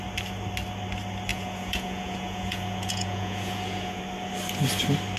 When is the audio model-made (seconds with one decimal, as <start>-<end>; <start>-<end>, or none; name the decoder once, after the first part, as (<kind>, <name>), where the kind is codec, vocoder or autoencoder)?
1.3-4.0 (vocoder, Vocos)